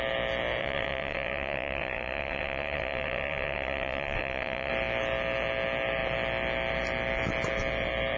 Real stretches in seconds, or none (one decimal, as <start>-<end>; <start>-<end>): 0.0-0.6; 4.7-8.2